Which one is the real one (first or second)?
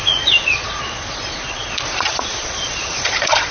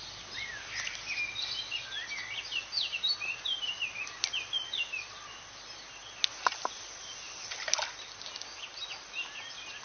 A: second